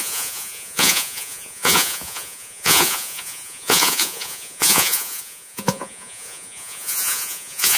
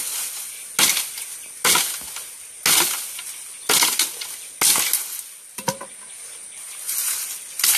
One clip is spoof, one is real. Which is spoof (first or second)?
first